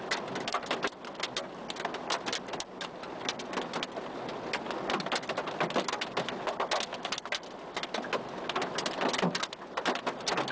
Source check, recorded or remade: recorded